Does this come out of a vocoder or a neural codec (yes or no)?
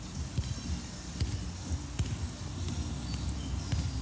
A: no